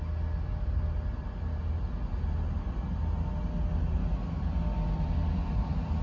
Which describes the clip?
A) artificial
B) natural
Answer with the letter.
B